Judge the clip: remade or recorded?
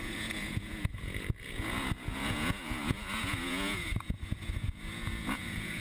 remade